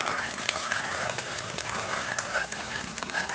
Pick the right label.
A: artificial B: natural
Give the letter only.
A